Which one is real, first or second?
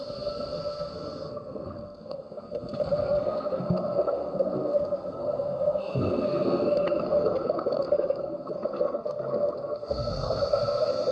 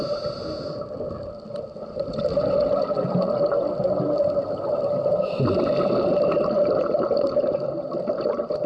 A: second